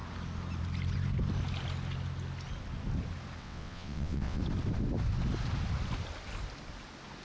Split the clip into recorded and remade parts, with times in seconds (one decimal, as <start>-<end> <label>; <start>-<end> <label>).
0.0-3.4 recorded; 3.4-4.4 remade; 4.4-7.2 recorded

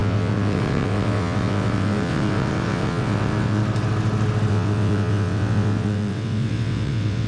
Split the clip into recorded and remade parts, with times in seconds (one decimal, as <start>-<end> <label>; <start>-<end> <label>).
0.0-3.6 remade; 3.6-4.5 recorded; 4.5-7.3 remade

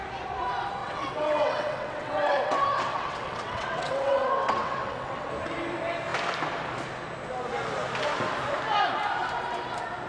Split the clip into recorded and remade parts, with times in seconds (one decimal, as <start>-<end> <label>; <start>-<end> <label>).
0.0-0.8 recorded; 0.8-5.3 remade; 5.3-10.1 recorded

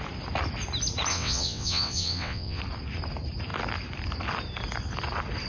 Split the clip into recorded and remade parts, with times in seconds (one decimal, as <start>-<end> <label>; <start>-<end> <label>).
0.0-1.1 recorded; 1.1-2.6 remade; 2.6-5.5 recorded

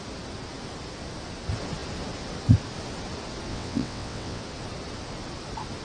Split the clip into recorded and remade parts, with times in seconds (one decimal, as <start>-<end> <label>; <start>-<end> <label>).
0.0-3.5 recorded; 3.5-4.4 remade; 4.4-5.8 recorded

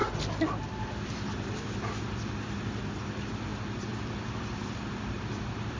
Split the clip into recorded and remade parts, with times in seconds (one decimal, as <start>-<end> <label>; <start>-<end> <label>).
0.0-5.8 recorded